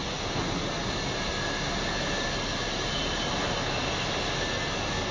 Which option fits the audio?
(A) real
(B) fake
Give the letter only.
A